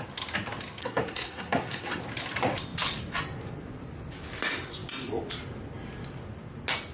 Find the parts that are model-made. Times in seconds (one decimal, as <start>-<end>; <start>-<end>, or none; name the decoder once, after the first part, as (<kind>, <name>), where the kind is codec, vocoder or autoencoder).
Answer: 0.8-2.0 (codec, SNAC)